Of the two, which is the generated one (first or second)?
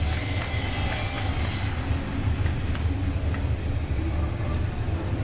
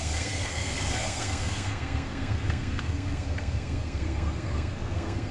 second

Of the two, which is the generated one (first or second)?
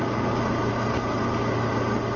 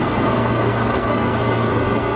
second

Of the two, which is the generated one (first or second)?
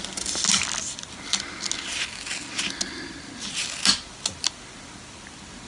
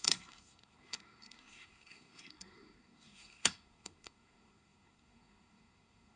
second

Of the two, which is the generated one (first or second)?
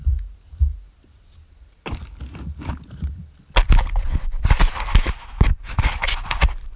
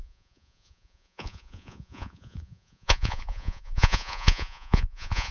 second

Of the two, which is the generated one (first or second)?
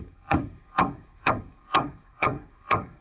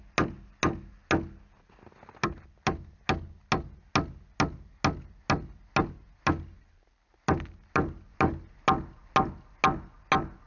first